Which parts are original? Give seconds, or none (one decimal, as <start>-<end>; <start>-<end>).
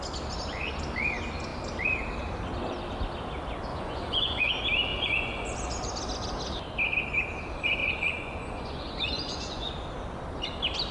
0.0-3.7; 4.5-4.9; 5.5-7.8; 9.7-10.9